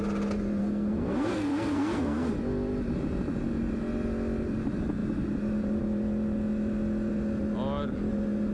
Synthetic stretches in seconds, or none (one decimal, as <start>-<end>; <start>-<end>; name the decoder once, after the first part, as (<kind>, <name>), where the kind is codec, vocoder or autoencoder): 0.6-2.3 (codec, SNAC)